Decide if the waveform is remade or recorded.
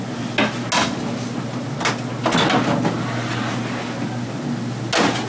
recorded